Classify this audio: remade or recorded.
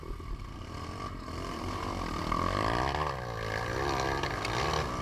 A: recorded